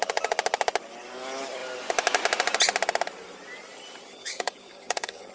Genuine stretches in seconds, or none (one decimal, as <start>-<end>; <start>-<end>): 0.0-4.2